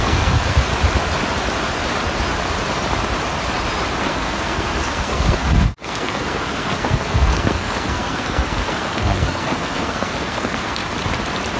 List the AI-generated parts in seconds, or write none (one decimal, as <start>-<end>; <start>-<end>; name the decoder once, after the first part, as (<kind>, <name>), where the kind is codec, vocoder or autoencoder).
0.0-0.7 (codec, SNAC); 4.0-10.8